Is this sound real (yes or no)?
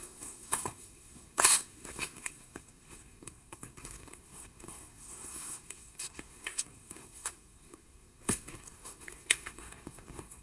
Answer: no